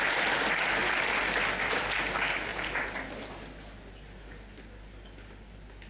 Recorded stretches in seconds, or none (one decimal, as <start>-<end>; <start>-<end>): 0.0-5.9